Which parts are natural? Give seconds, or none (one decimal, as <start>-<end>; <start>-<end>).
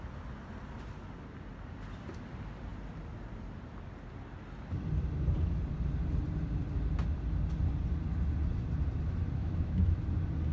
0.0-9.4; 10.0-10.5